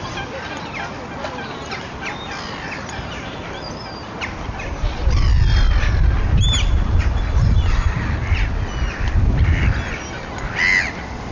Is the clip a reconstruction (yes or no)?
no